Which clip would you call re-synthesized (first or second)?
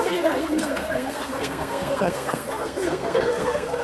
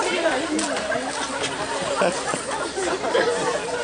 first